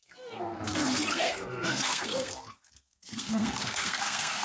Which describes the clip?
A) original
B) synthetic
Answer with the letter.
B